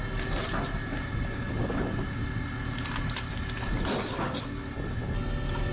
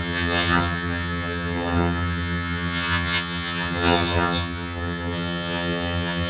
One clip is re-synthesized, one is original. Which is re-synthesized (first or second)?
second